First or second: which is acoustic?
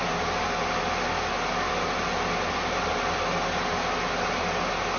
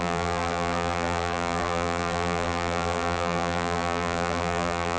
first